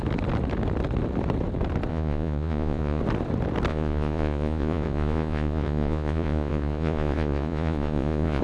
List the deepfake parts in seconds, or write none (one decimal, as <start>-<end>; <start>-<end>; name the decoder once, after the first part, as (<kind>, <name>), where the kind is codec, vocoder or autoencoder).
1.9-3.0 (vocoder, Vocos); 3.7-8.4